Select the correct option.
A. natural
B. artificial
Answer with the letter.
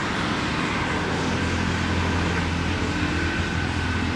A